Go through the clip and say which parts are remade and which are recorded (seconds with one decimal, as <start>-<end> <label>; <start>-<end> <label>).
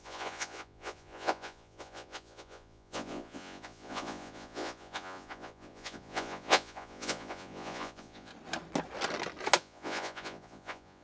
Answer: 0.0-8.3 remade; 8.3-9.6 recorded; 9.6-11.0 remade